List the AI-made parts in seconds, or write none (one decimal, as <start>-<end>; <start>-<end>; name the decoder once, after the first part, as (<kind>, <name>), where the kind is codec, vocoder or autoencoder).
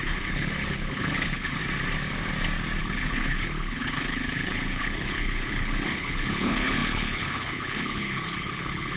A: 0.0-1.6 (codec, HILCodec); 2.8-9.0